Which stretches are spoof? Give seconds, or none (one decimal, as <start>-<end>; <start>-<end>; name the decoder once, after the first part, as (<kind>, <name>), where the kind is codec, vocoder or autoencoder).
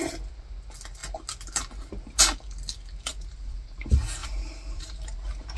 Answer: 3.1-3.8 (vocoder, BigVGAN v2); 4.2-5.6